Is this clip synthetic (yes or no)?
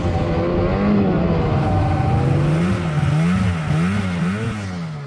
no